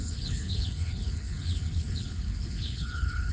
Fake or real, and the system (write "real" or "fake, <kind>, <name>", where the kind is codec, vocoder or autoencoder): fake, codec, HILCodec